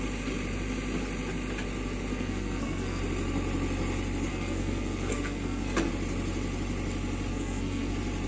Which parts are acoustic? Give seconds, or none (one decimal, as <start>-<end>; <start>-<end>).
0.0-2.1; 3.0-4.3; 5.9-7.3; 7.9-8.3